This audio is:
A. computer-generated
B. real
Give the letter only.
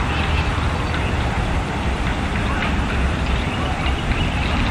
B